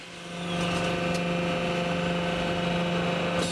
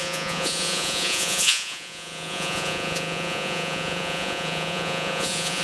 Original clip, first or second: first